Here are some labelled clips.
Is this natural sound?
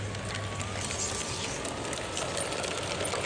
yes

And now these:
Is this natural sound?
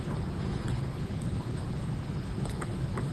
no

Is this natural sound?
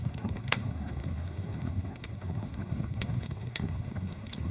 no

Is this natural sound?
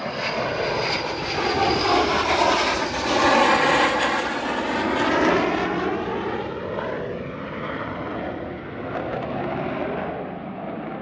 yes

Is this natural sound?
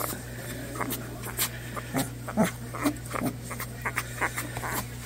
yes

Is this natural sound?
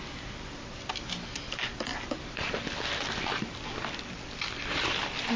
yes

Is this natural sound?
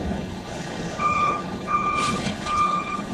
no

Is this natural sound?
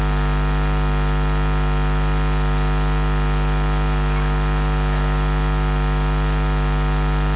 yes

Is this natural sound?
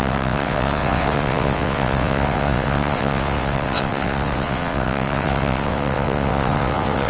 no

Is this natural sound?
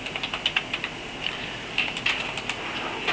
yes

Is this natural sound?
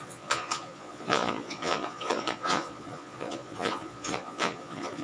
no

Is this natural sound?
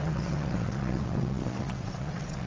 no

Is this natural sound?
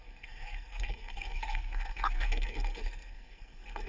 no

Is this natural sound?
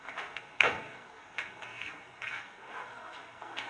no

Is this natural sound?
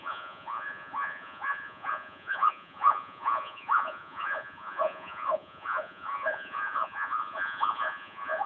no